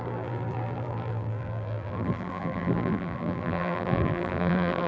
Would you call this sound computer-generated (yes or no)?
yes